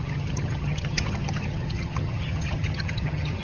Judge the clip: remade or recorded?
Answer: remade